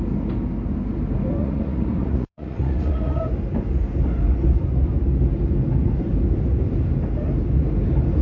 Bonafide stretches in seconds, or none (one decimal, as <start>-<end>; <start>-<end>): 0.0-1.4; 3.2-8.2